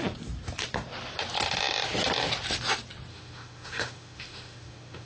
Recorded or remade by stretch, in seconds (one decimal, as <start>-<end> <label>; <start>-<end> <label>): 0.0-3.1 recorded; 3.1-5.1 remade